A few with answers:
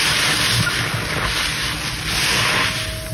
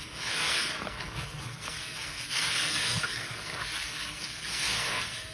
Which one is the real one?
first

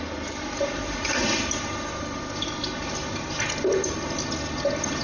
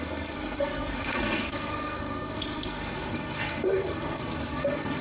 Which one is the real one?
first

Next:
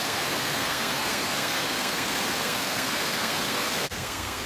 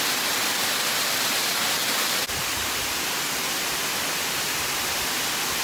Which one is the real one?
second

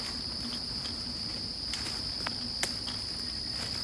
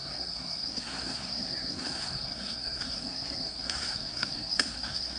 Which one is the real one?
first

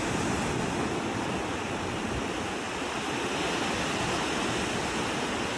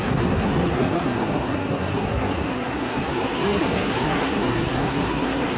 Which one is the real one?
first